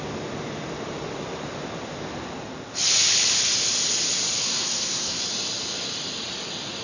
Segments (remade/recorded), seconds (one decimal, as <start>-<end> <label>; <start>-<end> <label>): 0.0-4.4 recorded; 4.4-5.2 remade; 5.2-6.8 recorded

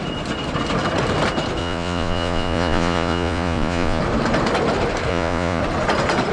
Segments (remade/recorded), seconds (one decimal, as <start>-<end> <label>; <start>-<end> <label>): 0.0-1.6 recorded; 1.6-4.0 remade; 4.0-5.1 recorded; 5.1-5.6 remade; 5.6-6.3 recorded

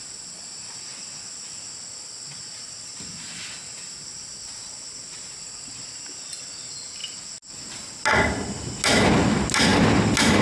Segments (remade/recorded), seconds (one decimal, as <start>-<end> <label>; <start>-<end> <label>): 0.0-10.4 recorded

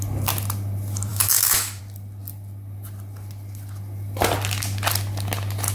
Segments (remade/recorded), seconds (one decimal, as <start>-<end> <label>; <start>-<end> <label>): 0.0-1.1 recorded; 1.1-1.8 remade; 1.8-5.7 recorded

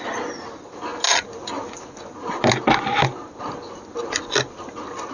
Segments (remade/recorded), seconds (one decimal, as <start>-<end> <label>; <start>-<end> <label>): 0.0-5.1 recorded

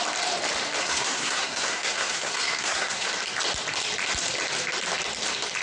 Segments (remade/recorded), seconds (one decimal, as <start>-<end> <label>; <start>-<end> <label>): 0.0-0.8 recorded; 0.8-3.1 remade; 3.1-5.6 recorded

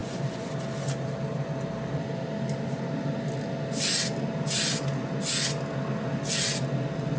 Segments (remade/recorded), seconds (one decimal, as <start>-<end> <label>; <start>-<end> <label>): 0.0-0.5 remade; 0.5-7.2 recorded

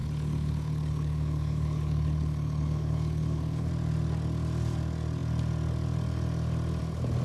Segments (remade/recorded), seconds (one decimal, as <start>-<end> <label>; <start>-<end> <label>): 0.0-3.7 remade; 3.7-7.2 recorded